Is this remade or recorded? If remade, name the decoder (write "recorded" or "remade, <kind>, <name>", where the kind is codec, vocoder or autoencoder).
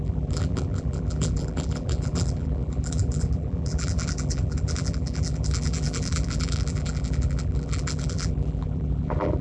remade, vocoder, BigVGAN v2